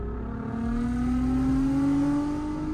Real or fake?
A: real